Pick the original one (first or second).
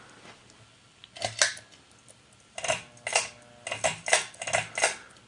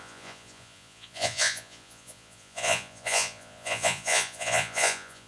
first